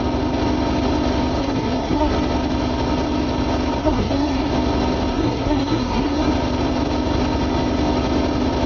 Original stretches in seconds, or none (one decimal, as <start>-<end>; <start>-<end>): 0.0-1.4; 2.1-3.8; 4.5-5.1; 6.3-8.7